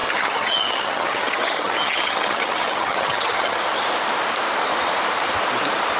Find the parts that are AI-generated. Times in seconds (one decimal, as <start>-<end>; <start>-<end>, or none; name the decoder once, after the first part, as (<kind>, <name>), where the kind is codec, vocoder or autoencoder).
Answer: 0.0-3.6 (vocoder, HiFi-GAN)